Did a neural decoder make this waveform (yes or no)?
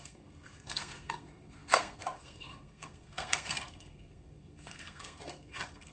yes